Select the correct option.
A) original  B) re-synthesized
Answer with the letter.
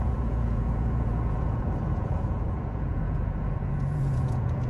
B